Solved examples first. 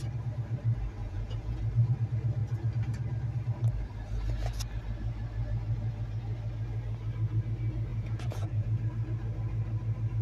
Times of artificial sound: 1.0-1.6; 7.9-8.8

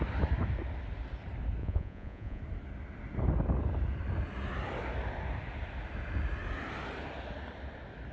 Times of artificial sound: 1.6-2.4